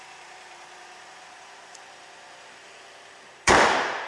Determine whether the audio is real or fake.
fake